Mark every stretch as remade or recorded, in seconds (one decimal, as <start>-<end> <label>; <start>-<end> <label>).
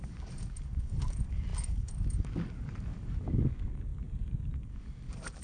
0.0-5.4 remade